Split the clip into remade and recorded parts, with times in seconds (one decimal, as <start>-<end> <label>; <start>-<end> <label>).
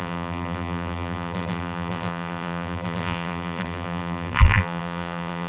0.0-5.5 remade